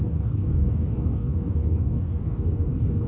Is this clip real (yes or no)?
no